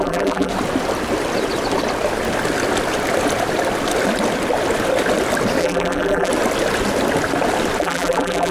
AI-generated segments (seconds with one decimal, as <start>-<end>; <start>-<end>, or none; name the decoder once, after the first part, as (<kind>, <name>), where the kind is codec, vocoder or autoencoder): 0.0-0.5 (vocoder, BigVGAN v2); 5.6-6.3; 7.8-8.5